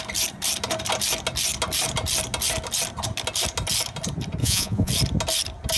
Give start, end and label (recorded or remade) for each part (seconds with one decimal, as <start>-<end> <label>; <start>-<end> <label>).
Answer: 0.0-4.4 recorded; 4.4-4.9 remade; 4.9-5.8 recorded